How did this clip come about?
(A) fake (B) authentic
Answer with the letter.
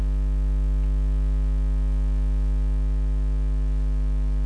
B